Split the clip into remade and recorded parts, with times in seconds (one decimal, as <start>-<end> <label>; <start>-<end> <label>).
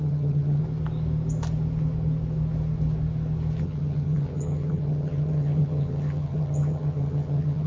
0.0-0.6 remade; 0.6-3.6 recorded; 3.6-7.7 remade